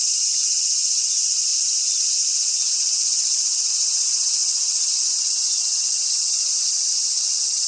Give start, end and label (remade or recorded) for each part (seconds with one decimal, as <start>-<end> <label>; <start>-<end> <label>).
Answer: 0.0-1.5 recorded; 1.5-3.7 remade; 3.7-4.4 recorded; 4.4-7.3 remade; 7.3-7.7 recorded